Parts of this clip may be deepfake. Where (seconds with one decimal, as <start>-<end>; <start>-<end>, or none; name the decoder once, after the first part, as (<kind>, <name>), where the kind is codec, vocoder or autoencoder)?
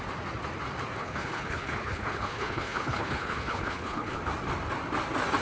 1.0-4.2 (codec, HILCodec)